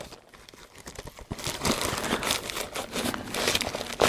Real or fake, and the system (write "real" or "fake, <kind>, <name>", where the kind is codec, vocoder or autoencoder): real